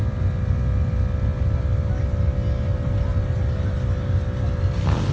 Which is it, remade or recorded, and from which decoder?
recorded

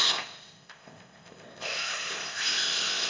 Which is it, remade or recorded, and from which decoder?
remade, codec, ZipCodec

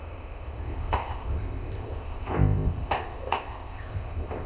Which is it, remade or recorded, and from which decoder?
remade, codec, ZipCodec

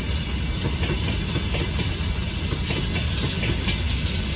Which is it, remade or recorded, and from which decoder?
recorded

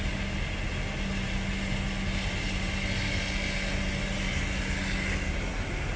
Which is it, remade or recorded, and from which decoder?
recorded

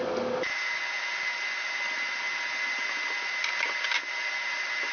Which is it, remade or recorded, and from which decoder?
recorded